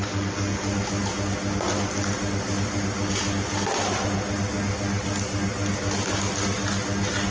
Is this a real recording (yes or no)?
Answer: yes